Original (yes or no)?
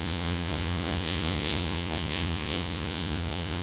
no